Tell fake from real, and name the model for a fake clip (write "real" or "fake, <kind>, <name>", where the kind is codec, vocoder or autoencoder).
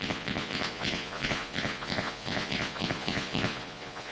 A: fake, vocoder, Vocos